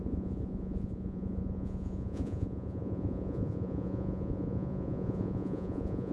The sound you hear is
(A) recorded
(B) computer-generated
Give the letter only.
B